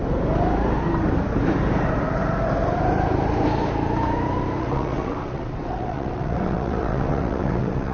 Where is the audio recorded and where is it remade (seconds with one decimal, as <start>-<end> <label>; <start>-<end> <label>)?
0.0-4.6 recorded; 4.6-7.9 remade